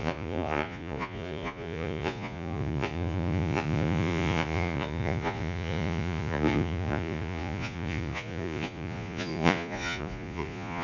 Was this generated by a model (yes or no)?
yes